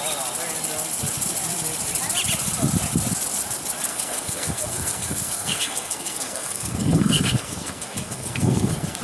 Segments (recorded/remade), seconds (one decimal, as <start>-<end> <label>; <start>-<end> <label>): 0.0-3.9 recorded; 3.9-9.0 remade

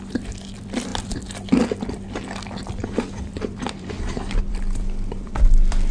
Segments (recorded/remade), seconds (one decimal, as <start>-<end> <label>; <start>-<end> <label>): 0.0-5.9 remade

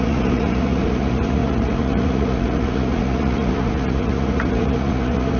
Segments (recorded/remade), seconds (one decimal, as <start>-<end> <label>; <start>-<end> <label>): 0.0-5.4 remade